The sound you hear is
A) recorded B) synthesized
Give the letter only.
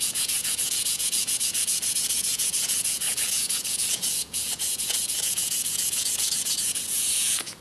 B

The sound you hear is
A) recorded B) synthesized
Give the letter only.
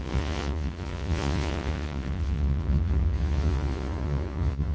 B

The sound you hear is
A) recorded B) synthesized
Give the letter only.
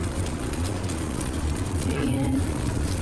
B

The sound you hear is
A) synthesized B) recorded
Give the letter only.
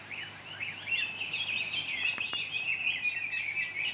B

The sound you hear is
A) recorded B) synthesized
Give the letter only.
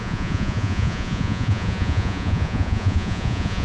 B